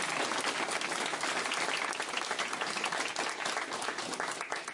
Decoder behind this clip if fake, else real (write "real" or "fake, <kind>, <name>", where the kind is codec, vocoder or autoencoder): real